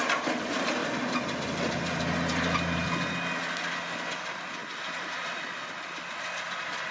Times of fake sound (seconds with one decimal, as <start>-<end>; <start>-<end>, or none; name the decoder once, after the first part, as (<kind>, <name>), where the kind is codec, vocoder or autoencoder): none